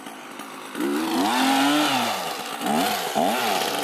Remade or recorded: recorded